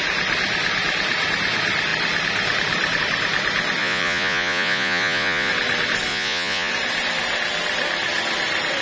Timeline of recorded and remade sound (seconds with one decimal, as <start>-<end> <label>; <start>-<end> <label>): 0.0-3.8 recorded; 3.8-5.5 remade; 5.5-6.1 recorded; 6.1-6.7 remade; 6.7-8.8 recorded